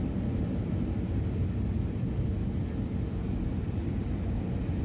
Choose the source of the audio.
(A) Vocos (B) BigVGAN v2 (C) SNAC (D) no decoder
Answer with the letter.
D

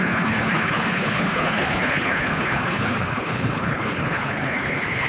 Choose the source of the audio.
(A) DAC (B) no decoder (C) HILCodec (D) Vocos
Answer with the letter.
C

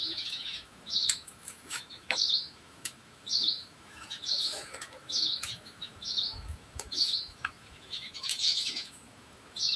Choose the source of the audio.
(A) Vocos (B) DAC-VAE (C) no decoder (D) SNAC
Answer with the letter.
B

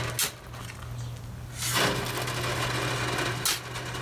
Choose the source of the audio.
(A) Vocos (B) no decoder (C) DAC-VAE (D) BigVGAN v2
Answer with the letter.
B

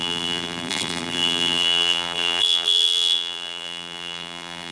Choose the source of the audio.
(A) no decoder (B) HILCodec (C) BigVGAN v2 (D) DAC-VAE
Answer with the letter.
C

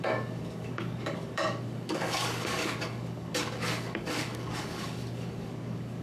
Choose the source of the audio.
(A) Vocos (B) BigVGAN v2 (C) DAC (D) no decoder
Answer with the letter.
C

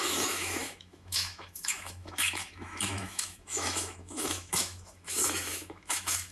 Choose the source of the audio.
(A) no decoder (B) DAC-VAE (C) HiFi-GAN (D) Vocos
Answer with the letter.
B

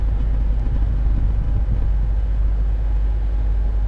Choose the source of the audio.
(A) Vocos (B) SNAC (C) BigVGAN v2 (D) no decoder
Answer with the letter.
D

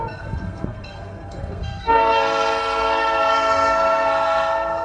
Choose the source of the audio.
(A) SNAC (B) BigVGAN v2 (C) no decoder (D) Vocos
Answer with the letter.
A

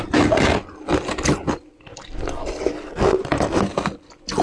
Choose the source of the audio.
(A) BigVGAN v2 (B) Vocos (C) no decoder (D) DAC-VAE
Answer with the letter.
C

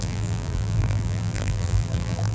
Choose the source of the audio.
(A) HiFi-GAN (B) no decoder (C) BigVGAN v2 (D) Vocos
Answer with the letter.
C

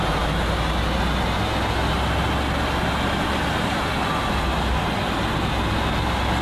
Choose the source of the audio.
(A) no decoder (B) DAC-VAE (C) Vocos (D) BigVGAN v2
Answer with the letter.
A